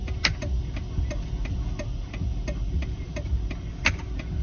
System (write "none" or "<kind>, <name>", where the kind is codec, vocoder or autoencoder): none